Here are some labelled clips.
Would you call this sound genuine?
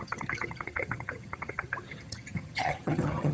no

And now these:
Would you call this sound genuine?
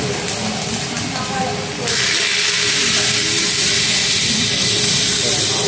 yes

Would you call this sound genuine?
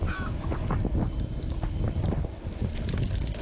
yes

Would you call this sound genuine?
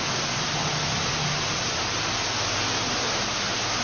yes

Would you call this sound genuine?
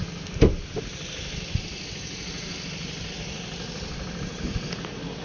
yes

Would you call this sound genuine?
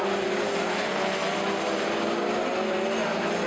yes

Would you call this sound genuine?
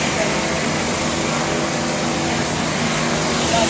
yes